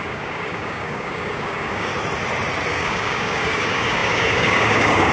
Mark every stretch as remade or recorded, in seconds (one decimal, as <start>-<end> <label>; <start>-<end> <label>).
0.0-1.9 remade; 1.9-2.7 recorded; 2.7-5.1 remade